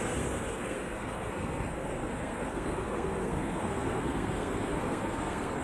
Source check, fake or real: fake